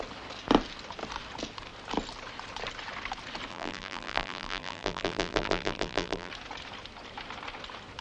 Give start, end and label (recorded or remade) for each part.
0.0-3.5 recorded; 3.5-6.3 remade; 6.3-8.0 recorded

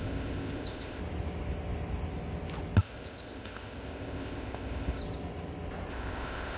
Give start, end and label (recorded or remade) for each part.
0.0-1.0 remade; 1.0-2.8 recorded; 2.8-5.0 remade; 5.0-5.9 recorded; 5.9-6.6 remade

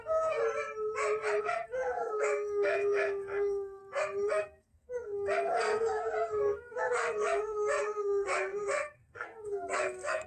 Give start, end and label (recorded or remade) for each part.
0.0-0.4 remade; 0.4-1.4 recorded; 1.4-3.8 remade; 3.8-4.3 recorded; 4.3-10.3 remade

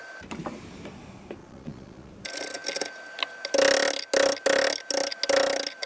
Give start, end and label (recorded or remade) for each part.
0.0-1.4 recorded; 1.4-2.1 remade; 2.1-5.9 recorded

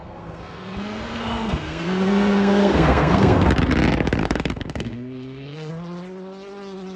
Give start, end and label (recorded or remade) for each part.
0.0-3.5 remade; 3.5-4.2 recorded; 4.2-5.7 remade; 5.7-7.0 recorded

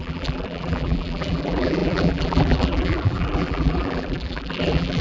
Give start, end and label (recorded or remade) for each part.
0.0-5.0 remade

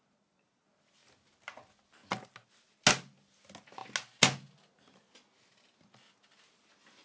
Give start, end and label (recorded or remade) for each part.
0.0-7.0 recorded